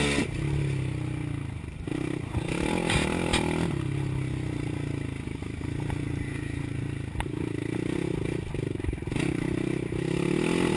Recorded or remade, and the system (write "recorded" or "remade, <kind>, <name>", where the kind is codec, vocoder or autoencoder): recorded